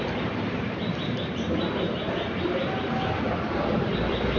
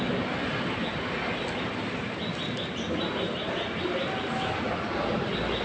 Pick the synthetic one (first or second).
first